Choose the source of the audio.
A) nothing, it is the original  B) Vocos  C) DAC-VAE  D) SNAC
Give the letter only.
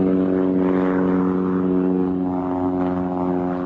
A